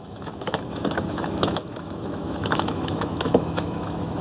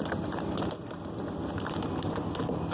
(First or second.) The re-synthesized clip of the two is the first